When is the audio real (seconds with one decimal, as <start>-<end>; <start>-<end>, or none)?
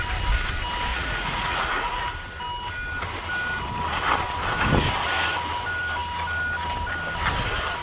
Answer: 0.0-0.9; 2.0-7.8